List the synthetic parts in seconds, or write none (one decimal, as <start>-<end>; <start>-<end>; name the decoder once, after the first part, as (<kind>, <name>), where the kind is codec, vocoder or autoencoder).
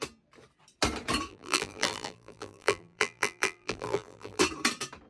1.3-4.4 (vocoder, BigVGAN v2)